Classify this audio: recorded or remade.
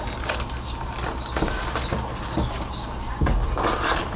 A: recorded